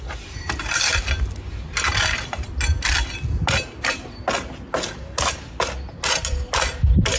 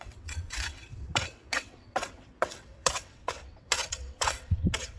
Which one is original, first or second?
first